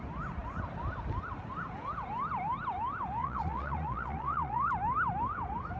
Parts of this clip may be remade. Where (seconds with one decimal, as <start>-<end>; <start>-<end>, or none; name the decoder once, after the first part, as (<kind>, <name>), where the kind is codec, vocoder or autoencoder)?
3.2-4.7 (vocoder, Vocos)